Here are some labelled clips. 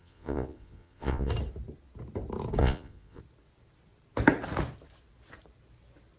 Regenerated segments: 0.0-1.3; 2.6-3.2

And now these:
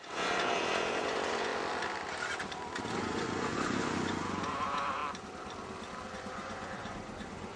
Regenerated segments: 0.0-1.5; 3.0-5.0; 6.1-7.6

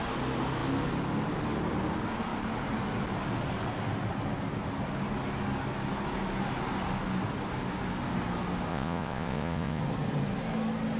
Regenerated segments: 8.7-9.8

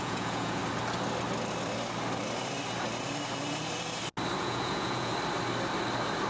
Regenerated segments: 0.0-0.6; 4.4-5.1

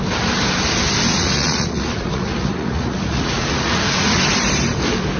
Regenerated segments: 1.1-4.2

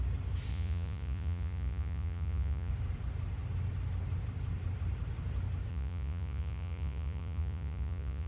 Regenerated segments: 0.5-2.7; 5.7-8.3

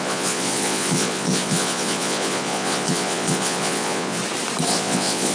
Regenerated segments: 0.0-4.2; 4.7-5.3